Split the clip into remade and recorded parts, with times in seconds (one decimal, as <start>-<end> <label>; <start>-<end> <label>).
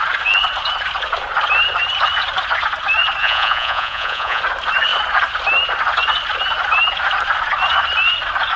0.0-3.2 recorded; 3.2-4.4 remade; 4.4-8.6 recorded